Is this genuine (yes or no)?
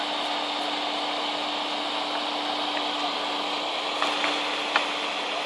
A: yes